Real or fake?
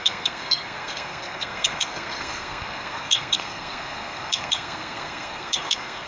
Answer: fake